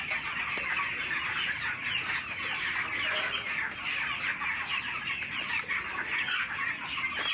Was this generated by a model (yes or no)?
no